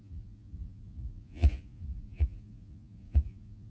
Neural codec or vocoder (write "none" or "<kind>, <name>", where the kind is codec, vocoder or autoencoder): vocoder, Vocos